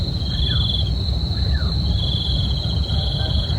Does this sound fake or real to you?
real